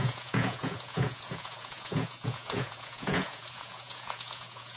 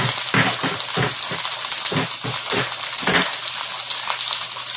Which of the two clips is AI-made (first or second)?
first